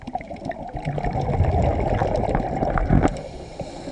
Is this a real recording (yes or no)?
yes